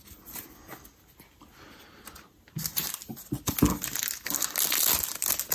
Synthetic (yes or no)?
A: no